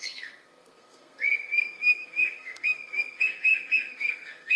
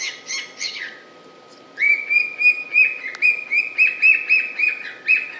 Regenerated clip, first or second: first